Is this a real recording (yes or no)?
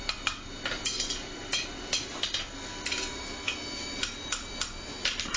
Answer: no